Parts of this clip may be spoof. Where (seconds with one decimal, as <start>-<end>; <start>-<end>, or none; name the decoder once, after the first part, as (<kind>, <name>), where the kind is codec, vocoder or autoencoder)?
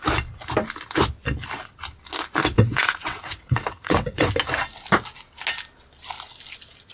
2.4-4.3 (vocoder, WaveNeXt)